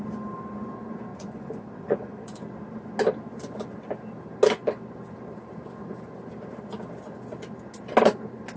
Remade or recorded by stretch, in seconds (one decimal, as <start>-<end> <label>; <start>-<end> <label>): 0.0-1.1 recorded; 1.1-2.4 remade; 2.4-8.6 recorded